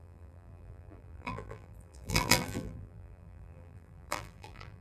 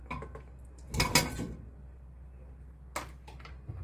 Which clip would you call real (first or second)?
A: second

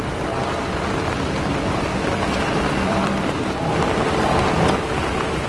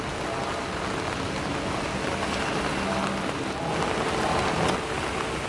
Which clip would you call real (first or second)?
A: second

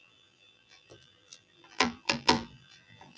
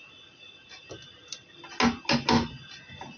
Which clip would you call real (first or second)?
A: second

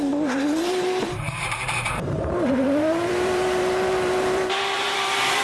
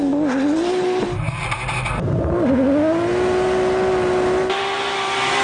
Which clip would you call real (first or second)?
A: second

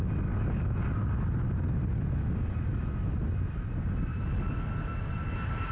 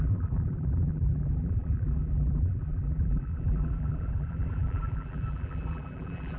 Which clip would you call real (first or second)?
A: first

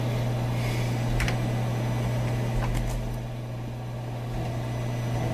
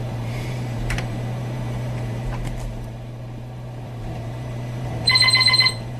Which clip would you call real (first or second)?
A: first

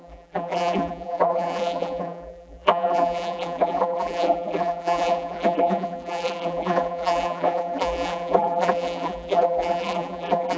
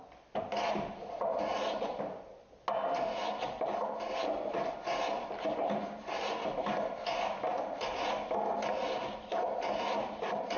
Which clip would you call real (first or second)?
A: second